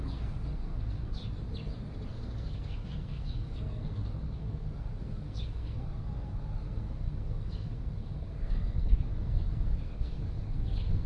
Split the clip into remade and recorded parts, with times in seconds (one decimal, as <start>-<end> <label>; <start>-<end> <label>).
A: 0.0-1.2 remade; 1.2-2.1 recorded; 2.1-11.1 remade